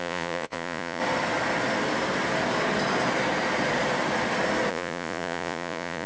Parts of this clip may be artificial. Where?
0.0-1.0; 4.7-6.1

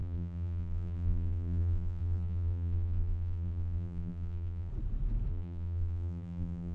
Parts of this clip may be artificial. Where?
0.0-4.7; 5.3-6.7

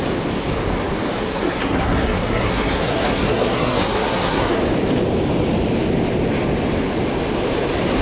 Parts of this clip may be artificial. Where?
1.2-4.6

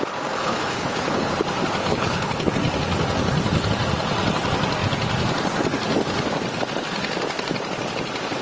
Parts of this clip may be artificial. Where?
0.4-1.3; 1.8-2.5